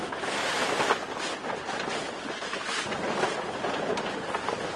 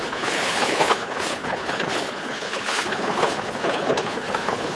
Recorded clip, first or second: first